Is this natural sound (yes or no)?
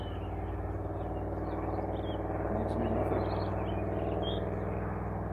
yes